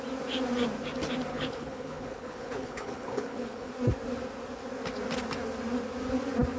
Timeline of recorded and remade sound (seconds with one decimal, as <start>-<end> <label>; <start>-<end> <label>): 0.0-1.3 recorded; 1.3-3.7 remade; 3.7-6.6 recorded